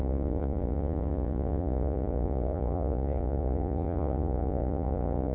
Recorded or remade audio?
remade